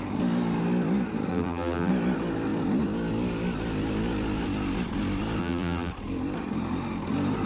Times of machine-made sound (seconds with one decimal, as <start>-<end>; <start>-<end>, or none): 1.3-1.9; 5.4-5.9